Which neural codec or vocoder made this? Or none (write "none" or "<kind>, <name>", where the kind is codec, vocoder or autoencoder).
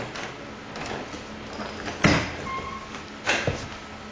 none